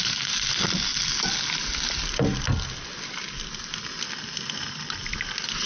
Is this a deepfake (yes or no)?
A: no